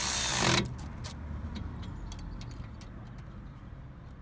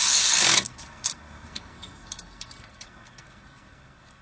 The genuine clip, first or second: first